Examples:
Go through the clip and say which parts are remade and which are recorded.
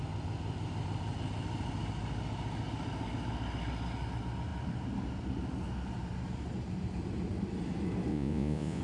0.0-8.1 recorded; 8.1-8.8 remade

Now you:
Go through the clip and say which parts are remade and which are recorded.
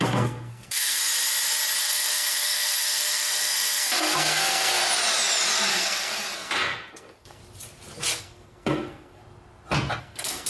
0.0-1.0 remade; 1.0-1.8 recorded; 1.8-4.8 remade; 4.8-5.7 recorded; 5.7-7.4 remade; 7.4-8.2 recorded; 8.2-9.2 remade; 9.2-10.0 recorded; 10.0-10.5 remade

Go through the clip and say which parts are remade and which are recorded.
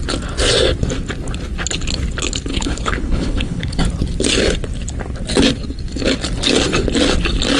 0.0-2.5 recorded; 2.5-3.8 remade; 3.8-7.6 recorded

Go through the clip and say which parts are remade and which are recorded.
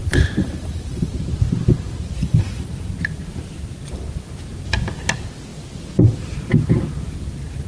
0.0-1.1 remade; 1.1-2.2 recorded; 2.2-2.9 remade; 2.9-7.7 recorded